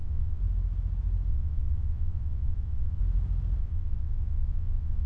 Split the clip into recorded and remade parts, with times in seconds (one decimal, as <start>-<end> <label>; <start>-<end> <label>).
0.0-0.4 remade; 0.4-1.3 recorded; 1.3-3.0 remade; 3.0-3.6 recorded; 3.6-5.1 remade